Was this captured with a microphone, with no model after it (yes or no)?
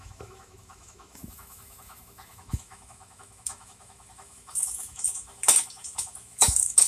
no